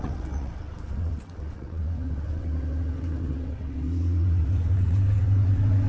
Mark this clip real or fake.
fake